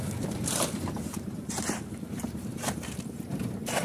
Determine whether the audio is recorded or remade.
remade